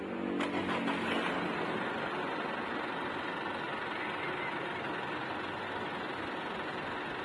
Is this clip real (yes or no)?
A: yes